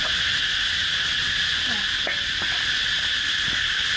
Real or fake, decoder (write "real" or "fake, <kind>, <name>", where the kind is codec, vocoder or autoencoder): real